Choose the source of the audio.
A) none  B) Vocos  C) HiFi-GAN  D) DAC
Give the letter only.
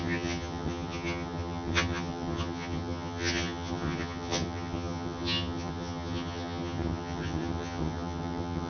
C